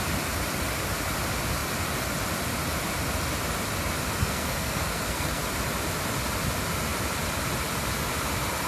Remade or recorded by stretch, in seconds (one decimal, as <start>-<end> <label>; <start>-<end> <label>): 0.0-4.2 recorded; 4.2-5.4 remade; 5.4-8.7 recorded